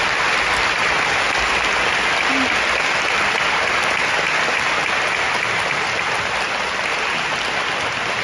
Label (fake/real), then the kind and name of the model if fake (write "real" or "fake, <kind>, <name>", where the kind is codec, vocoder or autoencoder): real